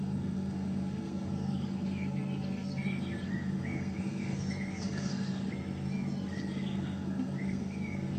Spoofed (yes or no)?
yes